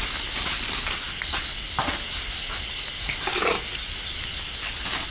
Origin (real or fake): real